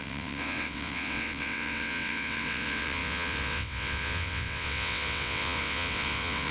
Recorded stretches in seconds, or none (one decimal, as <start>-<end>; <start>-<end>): none